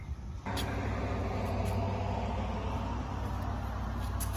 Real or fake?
real